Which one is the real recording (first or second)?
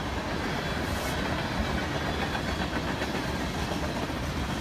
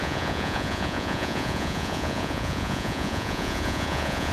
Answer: first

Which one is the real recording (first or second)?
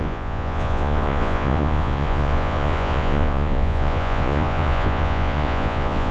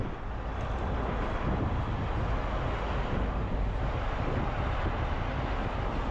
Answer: second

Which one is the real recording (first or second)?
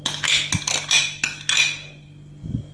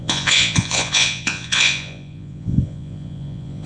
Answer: first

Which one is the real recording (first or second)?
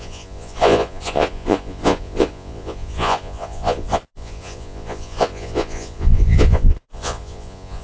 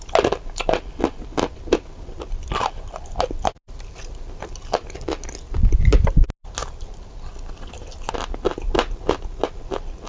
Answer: second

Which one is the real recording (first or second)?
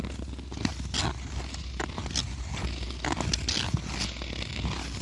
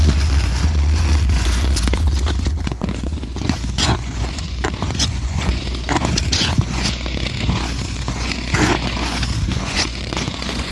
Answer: first